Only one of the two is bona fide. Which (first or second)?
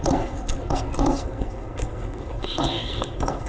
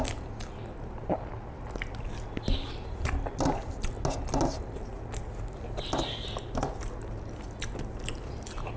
second